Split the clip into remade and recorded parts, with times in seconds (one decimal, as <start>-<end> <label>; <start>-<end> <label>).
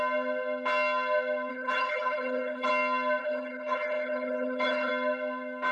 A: 0.0-1.5 recorded; 1.5-2.7 remade; 2.7-3.2 recorded; 3.2-4.9 remade; 4.9-5.7 recorded